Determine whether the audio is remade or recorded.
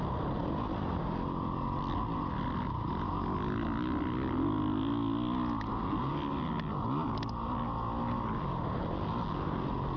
recorded